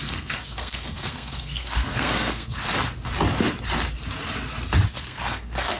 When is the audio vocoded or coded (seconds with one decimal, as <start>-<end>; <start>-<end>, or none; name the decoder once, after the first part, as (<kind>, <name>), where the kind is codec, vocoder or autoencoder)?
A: 0.0-2.6 (codec, SNAC); 4.9-5.8